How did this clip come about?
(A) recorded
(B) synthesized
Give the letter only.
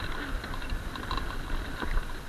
A